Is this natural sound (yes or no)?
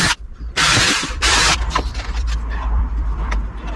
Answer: no